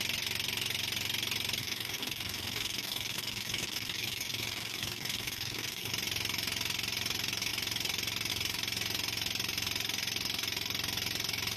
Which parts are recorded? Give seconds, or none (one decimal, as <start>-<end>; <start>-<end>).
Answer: 0.0-1.6; 5.9-11.6

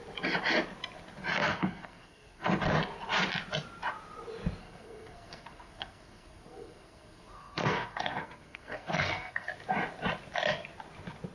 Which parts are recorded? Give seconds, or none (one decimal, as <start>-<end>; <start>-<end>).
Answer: 0.0-1.4; 2.5-4.6; 9.5-11.3

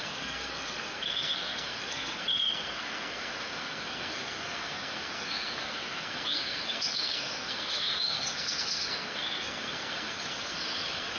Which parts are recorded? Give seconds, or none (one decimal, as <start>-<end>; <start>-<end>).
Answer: none

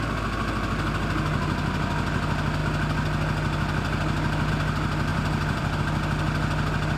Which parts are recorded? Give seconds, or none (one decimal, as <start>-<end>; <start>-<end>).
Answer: 0.0-5.1; 5.8-7.0

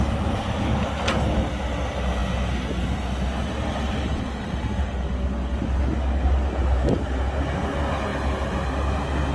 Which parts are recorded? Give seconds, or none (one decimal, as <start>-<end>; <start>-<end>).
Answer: 0.0-9.3

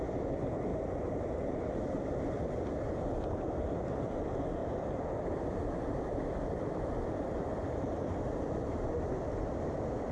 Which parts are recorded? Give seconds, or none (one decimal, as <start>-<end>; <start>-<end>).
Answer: 0.0-0.7; 1.7-4.6; 6.9-10.1

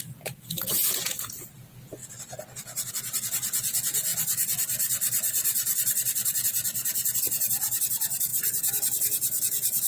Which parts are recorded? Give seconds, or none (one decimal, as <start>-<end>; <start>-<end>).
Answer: 4.1-7.2